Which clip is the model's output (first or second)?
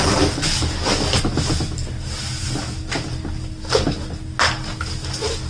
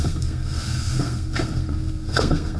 second